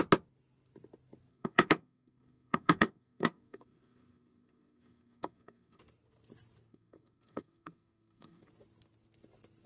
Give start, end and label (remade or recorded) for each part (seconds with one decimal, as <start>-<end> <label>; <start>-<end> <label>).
0.0-1.3 recorded; 1.3-5.8 remade; 5.8-6.7 recorded; 6.7-8.4 remade; 8.4-9.7 recorded